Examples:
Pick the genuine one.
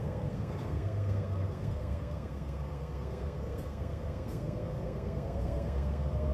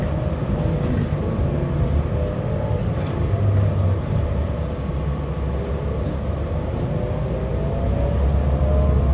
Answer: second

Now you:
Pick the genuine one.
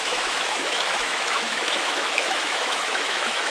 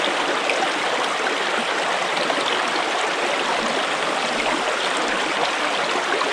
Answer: second